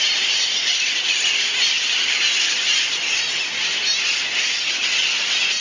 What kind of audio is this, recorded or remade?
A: recorded